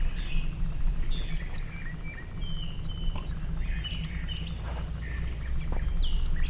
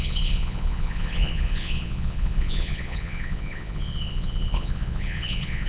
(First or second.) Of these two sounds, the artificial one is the second